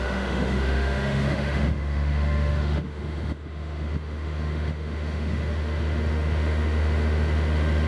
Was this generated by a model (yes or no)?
yes